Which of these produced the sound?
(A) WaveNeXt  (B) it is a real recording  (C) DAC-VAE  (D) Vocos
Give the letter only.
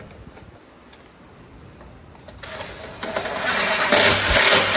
B